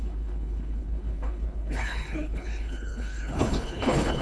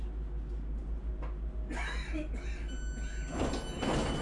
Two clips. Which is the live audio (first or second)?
second